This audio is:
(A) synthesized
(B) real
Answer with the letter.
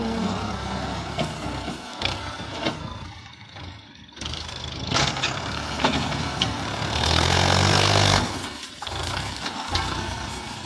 A